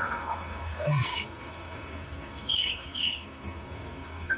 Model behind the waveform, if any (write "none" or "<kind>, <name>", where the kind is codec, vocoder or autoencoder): codec, SNAC